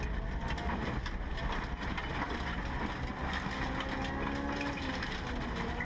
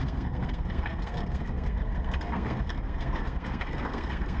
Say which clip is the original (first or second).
first